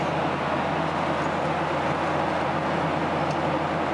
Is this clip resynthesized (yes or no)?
no